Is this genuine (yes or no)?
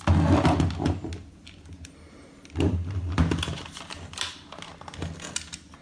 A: yes